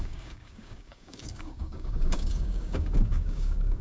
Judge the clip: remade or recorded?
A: remade